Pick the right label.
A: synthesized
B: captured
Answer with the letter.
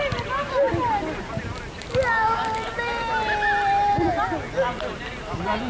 B